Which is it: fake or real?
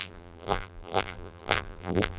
fake